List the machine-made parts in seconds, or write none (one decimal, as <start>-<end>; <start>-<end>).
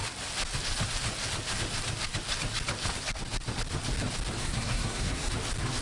4.4-5.3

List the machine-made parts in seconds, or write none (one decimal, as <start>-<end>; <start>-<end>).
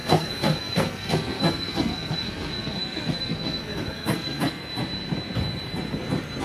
0.0-4.7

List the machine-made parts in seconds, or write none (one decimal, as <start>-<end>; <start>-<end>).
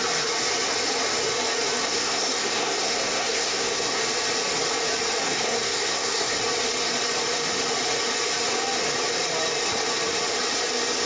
1.8-4.0; 5.2-6.3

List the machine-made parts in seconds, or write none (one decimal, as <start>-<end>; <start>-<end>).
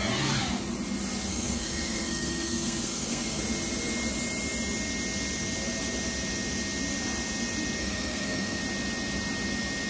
1.3-3.4; 7.8-8.6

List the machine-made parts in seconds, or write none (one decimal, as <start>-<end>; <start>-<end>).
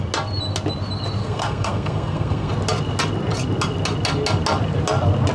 1.2-2.5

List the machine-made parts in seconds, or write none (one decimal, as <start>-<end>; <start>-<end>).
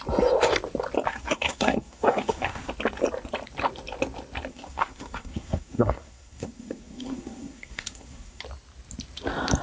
1.1-2.7; 4.5-8.4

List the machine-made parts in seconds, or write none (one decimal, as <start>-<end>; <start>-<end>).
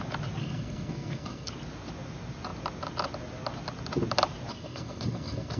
0.4-1.5; 4.5-5.6